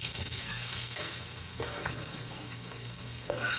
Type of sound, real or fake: fake